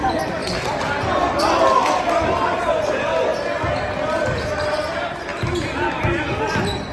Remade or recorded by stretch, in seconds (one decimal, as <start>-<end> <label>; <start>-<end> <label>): 0.0-0.4 recorded; 0.4-1.4 remade; 1.4-1.8 recorded; 1.8-2.4 remade; 2.4-6.9 recorded